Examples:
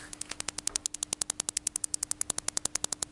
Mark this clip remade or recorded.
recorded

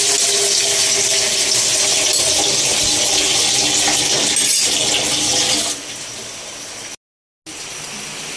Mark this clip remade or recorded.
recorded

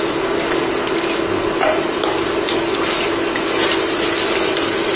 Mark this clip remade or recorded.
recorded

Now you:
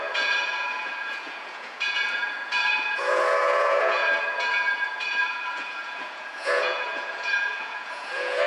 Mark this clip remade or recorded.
remade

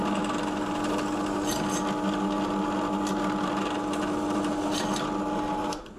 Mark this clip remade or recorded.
recorded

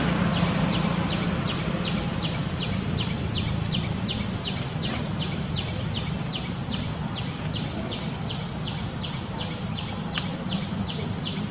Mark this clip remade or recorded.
recorded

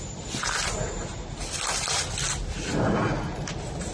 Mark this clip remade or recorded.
recorded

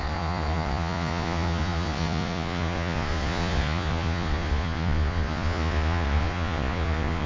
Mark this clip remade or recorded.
remade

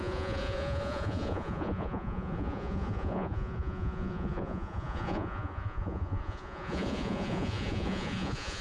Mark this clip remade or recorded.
remade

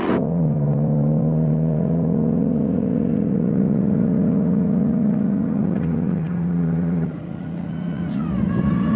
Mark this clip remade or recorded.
remade